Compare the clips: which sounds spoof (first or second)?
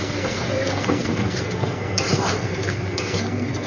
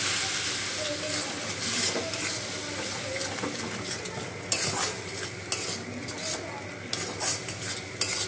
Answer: first